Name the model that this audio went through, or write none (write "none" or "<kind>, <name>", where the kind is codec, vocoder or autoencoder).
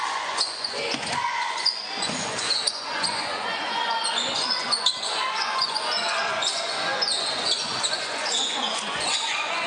vocoder, Vocos